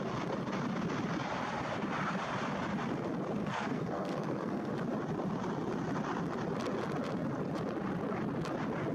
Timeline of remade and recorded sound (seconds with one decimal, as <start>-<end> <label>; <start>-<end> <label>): 0.0-3.4 recorded; 3.4-4.7 remade; 4.7-8.9 recorded